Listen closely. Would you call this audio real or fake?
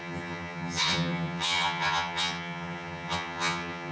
fake